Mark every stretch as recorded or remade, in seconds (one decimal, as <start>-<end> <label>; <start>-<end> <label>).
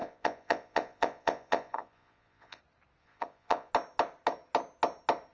0.0-2.6 remade; 2.6-3.0 recorded; 3.0-3.7 remade; 3.7-5.3 recorded